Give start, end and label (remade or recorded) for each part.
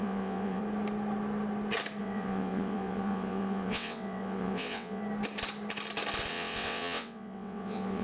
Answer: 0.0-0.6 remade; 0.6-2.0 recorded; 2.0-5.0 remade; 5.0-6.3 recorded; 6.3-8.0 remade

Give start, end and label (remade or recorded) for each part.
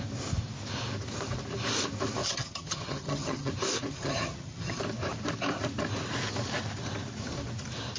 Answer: 0.0-2.2 recorded; 2.2-3.5 remade; 3.5-3.9 recorded; 3.9-4.8 remade; 4.8-8.0 recorded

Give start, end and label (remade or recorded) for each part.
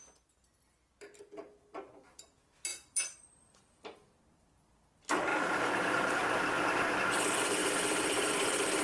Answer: 0.0-2.7 recorded; 2.7-3.7 remade; 3.7-5.3 recorded; 5.3-6.4 remade; 6.4-7.6 recorded; 7.6-8.3 remade; 8.3-8.8 recorded